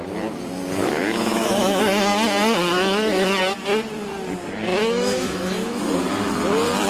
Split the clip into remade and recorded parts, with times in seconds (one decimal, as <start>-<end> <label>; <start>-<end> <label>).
0.0-0.8 recorded; 0.8-1.8 remade; 1.8-2.6 recorded; 2.6-3.4 remade; 3.4-4.7 recorded; 4.7-5.8 remade; 5.8-6.9 recorded